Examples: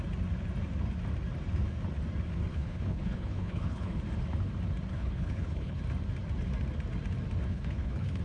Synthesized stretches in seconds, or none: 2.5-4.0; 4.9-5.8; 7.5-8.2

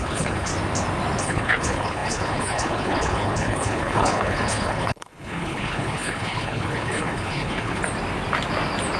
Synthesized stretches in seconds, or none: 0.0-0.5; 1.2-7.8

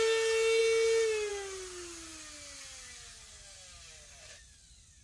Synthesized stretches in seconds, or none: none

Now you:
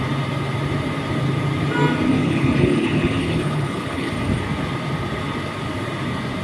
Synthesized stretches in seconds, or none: 2.2-4.1

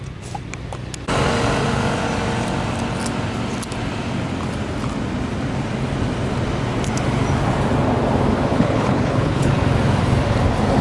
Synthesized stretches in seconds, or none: 8.5-9.5

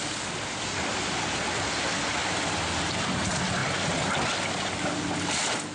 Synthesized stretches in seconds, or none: none

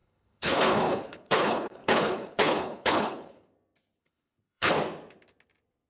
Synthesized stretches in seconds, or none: 0.0-3.5; 4.0-4.7